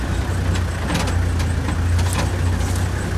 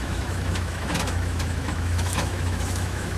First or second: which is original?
first